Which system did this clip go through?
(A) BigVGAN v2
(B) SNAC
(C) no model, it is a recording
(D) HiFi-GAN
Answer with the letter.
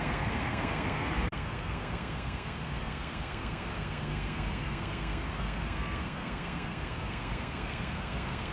B